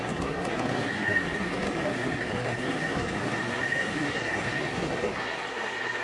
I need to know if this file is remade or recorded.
remade